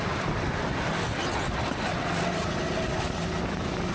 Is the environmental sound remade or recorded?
recorded